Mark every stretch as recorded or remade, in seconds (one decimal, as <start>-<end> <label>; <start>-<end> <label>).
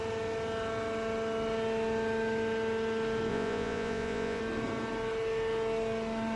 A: 0.0-3.3 recorded; 3.3-4.4 remade; 4.4-6.4 recorded